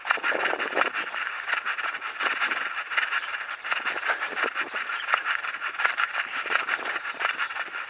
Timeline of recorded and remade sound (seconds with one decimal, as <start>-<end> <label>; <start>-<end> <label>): 0.0-7.9 remade